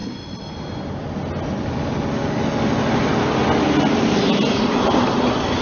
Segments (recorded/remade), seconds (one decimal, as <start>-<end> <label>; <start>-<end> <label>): 0.0-5.6 recorded